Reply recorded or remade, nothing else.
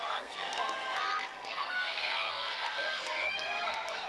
remade